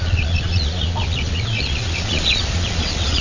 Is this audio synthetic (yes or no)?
yes